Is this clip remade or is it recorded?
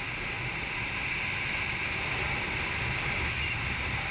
recorded